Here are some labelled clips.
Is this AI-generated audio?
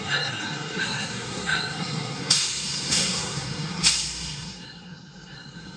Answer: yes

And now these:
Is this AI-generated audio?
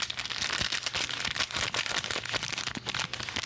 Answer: no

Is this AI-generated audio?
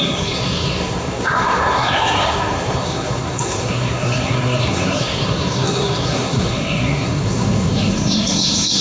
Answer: yes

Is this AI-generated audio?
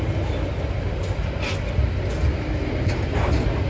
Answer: no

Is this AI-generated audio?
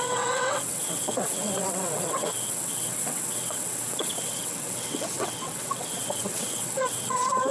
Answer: yes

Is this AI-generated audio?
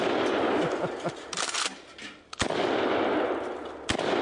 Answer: no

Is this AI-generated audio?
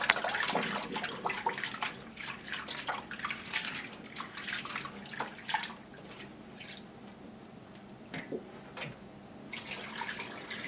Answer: no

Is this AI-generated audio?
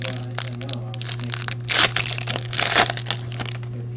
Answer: no